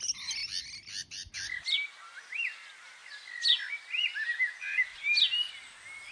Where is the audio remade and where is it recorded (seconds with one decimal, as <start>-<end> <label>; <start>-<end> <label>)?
0.0-6.1 recorded